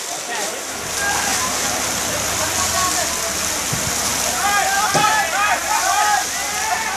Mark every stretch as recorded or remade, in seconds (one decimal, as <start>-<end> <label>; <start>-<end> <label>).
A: 0.0-7.0 recorded